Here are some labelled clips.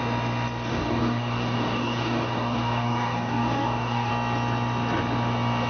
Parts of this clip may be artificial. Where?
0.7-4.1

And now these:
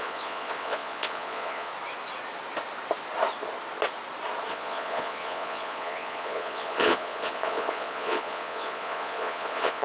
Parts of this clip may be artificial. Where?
0.0-1.7; 4.5-9.8

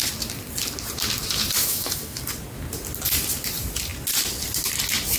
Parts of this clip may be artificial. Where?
1.6-2.2